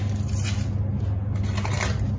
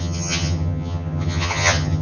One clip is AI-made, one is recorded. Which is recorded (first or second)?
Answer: first